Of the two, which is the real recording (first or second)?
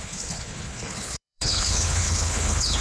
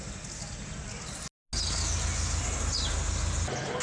second